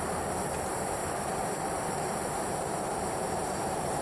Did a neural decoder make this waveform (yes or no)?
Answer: yes